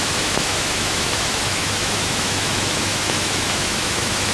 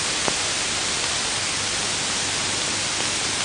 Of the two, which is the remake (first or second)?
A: first